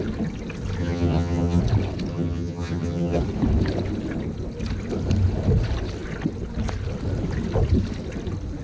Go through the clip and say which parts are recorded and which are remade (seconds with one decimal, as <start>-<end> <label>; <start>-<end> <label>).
0.0-0.8 recorded; 0.8-1.6 remade; 1.6-2.1 recorded; 2.1-3.2 remade; 3.2-8.6 recorded